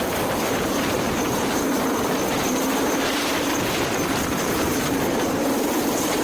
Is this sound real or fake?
fake